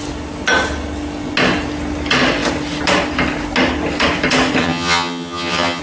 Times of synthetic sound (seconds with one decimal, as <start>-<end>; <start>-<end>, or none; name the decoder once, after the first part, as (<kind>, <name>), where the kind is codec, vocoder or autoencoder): 4.6-5.8 (vocoder, HiFi-GAN)